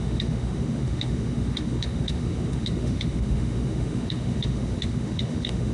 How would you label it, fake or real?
fake